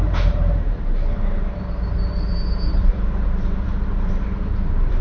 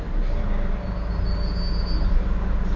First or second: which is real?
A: second